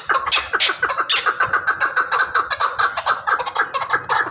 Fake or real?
real